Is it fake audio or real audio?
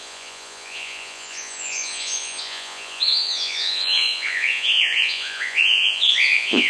fake